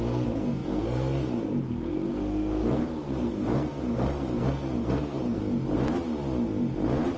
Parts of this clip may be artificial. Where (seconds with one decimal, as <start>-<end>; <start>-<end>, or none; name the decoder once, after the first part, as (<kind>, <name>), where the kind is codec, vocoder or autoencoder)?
0.0-5.4 (codec, SNAC)